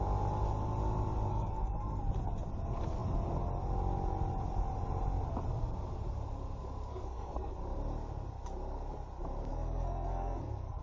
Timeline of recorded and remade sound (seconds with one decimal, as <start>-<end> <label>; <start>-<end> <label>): 0.0-1.3 recorded; 1.3-2.0 remade; 2.0-6.9 recorded; 6.9-7.5 remade; 7.5-9.5 recorded; 9.5-10.8 remade